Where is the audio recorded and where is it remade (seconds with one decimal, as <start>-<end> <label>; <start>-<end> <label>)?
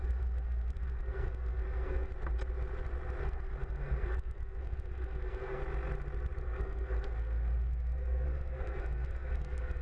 0.0-2.1 remade; 2.1-3.2 recorded; 3.2-5.6 remade; 5.6-6.4 recorded; 6.4-9.8 remade